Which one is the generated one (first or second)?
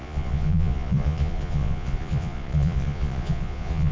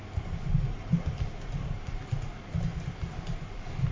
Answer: first